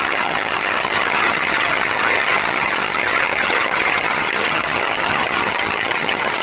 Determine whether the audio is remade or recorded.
remade